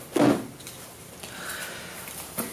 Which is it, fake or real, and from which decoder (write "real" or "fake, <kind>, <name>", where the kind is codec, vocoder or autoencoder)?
real